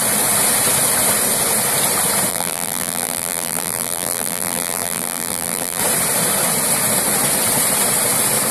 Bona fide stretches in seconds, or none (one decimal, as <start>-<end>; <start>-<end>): 0.0-2.3; 5.8-8.5